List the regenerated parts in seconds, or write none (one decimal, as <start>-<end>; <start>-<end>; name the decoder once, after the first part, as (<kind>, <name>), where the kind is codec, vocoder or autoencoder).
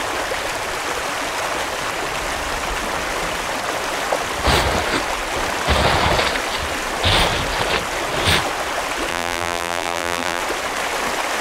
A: 9.1-10.4 (vocoder, BigVGAN v2)